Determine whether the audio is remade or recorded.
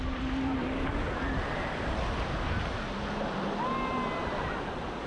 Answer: recorded